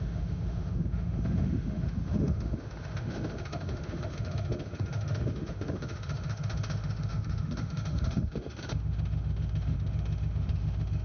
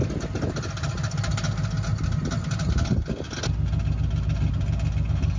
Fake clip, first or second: first